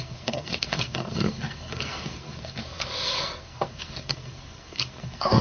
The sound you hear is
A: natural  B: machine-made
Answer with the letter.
B